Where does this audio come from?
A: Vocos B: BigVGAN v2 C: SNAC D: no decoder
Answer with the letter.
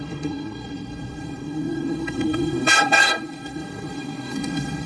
C